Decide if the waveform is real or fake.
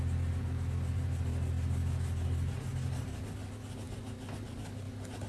real